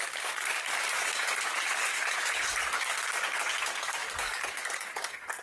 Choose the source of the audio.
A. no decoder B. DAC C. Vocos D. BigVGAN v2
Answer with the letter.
B